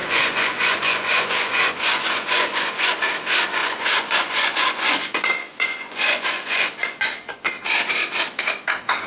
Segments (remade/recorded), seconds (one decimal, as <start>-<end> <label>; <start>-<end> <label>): 0.0-2.9 remade; 2.9-3.6 recorded; 3.6-7.5 remade; 7.5-9.1 recorded